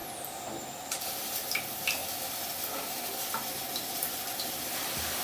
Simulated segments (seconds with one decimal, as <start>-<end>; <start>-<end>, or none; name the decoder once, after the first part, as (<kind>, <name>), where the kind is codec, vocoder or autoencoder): none